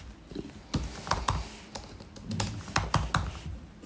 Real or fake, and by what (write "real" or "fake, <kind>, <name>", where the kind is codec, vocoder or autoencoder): real